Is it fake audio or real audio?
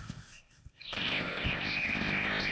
fake